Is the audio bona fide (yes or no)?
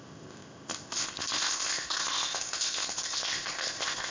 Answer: no